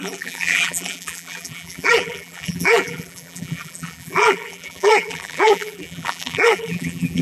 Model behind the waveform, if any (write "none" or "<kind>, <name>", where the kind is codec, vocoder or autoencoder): vocoder, BigVGAN v2